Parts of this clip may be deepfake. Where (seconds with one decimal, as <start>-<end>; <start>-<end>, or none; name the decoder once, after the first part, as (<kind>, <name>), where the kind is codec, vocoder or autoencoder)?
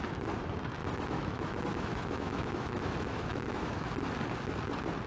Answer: 0.8-3.9 (autoencoder, DAC-VAE)